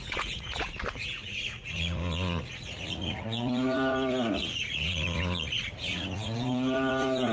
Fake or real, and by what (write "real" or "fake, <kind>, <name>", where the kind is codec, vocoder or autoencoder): fake, vocoder, Vocos